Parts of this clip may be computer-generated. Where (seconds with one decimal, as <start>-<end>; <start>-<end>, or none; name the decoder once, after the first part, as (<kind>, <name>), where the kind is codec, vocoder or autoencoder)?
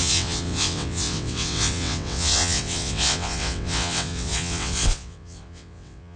0.0-6.2 (vocoder, WaveNeXt)